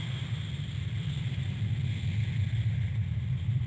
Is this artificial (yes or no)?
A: no